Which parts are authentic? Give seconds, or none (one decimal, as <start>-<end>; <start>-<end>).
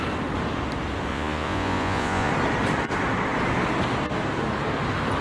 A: 0.0-1.1; 2.3-5.2